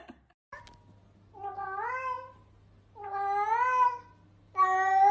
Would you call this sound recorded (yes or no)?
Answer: yes